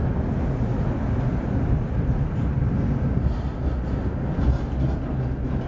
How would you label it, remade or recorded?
recorded